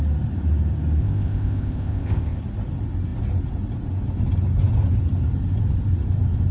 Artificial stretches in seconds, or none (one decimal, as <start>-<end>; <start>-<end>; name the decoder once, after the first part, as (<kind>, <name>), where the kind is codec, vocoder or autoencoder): 1.0-2.4 (codec, ZipCodec)